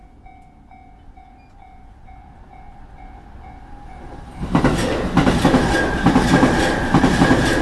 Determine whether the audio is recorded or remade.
recorded